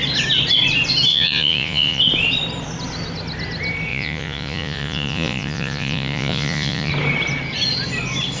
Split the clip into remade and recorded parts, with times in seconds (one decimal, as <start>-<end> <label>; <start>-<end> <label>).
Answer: 0.0-1.1 recorded; 1.1-2.0 remade; 2.0-3.9 recorded; 3.9-6.9 remade; 6.9-8.4 recorded